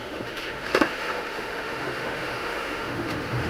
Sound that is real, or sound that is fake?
fake